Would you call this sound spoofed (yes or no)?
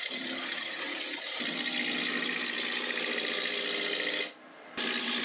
no